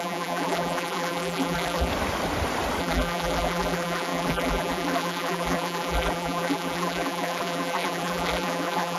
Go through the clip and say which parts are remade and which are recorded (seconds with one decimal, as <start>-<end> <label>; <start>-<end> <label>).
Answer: 0.0-1.9 remade; 1.9-2.8 recorded; 2.8-9.0 remade